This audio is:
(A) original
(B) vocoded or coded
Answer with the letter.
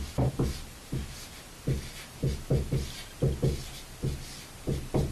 A